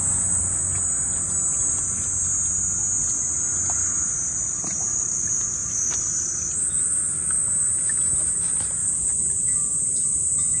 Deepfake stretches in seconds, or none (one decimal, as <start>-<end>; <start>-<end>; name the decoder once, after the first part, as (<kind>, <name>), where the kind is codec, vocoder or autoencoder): 5.6-6.4 (vocoder, BigVGAN v2)